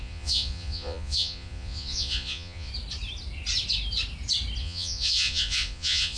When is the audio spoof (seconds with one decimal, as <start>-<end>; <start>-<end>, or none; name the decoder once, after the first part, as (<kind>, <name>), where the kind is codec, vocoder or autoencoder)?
0.0-2.7 (vocoder, Vocos); 4.6-6.2